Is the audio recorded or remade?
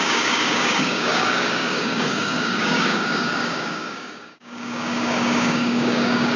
remade